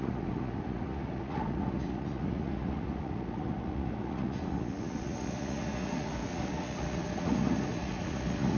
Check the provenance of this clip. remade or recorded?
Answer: remade